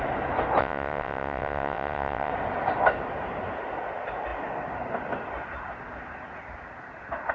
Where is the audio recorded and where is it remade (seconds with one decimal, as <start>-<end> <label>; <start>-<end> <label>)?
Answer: 0.0-0.6 recorded; 0.6-2.3 remade; 2.3-7.3 recorded